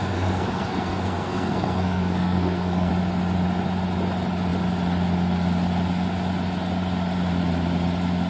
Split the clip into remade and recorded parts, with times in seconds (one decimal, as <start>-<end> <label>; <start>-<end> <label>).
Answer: 0.0-2.9 remade; 2.9-8.3 recorded